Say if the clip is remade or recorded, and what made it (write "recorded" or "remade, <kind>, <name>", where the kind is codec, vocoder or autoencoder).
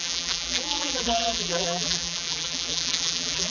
remade, vocoder, BigVGAN v2